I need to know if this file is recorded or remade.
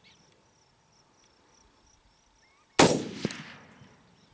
recorded